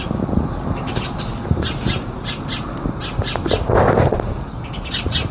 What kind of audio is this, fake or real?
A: real